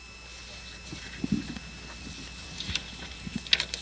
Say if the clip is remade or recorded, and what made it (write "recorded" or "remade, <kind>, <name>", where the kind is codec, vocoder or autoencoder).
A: recorded